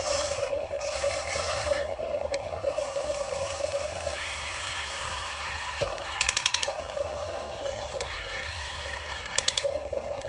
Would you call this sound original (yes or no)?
no